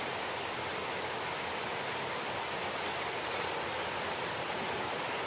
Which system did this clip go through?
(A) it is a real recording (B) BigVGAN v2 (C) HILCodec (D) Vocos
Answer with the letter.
A